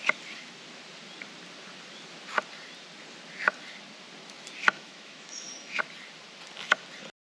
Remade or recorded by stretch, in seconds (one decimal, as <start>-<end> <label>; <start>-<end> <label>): 0.0-4.6 recorded; 4.6-5.8 remade; 5.8-7.3 recorded